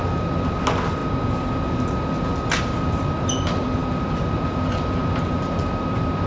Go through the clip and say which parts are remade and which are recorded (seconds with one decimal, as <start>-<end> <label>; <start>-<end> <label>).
0.0-6.3 recorded